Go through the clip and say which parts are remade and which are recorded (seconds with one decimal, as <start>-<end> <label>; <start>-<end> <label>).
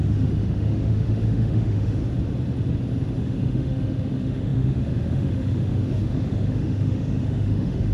0.0-2.0 remade; 2.0-3.2 recorded; 3.2-7.9 remade